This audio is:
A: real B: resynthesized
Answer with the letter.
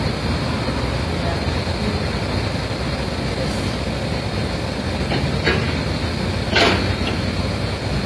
A